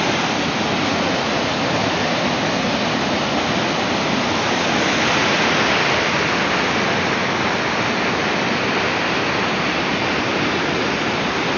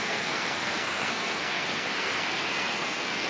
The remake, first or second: second